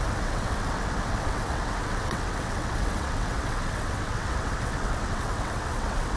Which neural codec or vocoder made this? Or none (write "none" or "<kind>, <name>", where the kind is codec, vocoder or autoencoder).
vocoder, WaveNeXt